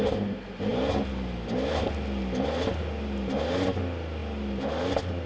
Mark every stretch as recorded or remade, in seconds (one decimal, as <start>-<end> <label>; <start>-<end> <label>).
0.0-5.3 recorded